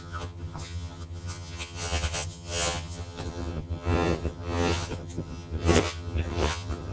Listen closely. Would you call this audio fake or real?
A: fake